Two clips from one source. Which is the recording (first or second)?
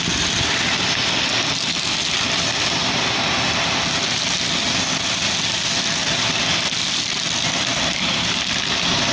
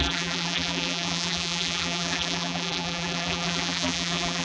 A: first